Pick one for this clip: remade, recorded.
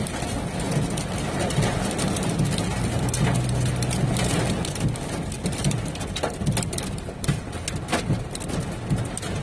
recorded